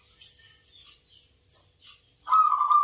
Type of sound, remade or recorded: recorded